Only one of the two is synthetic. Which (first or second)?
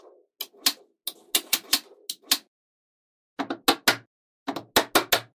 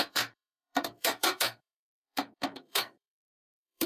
second